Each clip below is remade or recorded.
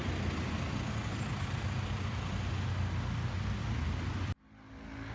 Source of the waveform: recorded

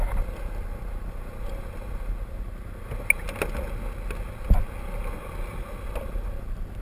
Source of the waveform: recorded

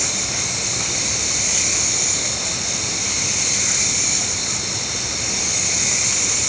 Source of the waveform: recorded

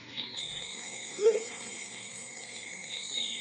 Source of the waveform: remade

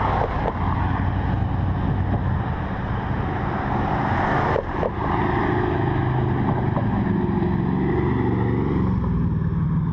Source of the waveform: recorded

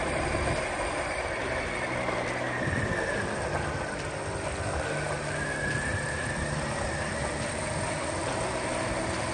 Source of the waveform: recorded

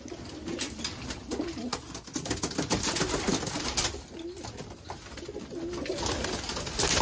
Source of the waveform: recorded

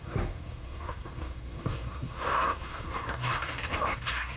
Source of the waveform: remade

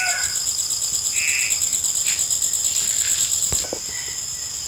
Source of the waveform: recorded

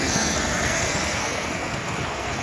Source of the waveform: remade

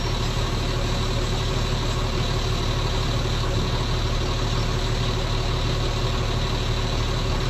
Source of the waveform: recorded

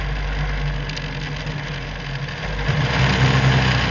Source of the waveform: recorded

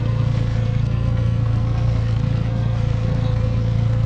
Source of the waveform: remade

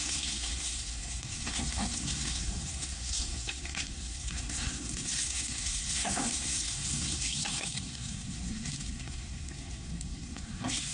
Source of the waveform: remade